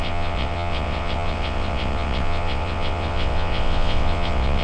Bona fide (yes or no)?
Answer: no